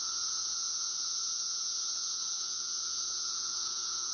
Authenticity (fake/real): fake